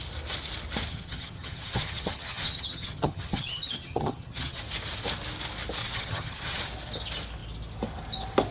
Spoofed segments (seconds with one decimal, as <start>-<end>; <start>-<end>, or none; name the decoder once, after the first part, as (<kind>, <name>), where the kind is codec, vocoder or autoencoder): 0.9-4.6 (vocoder, HiFi-GAN); 5.8-6.6